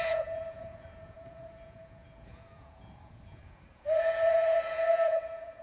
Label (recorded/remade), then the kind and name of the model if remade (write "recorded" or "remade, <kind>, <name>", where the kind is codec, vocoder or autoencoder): remade, vocoder, Vocos